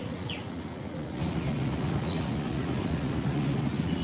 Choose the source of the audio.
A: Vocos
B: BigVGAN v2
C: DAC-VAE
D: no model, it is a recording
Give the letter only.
A